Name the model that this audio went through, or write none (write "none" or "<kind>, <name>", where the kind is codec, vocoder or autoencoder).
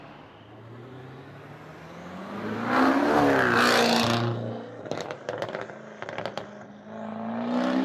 none